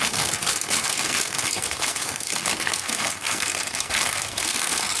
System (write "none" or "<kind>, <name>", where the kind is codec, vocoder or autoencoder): codec, SNAC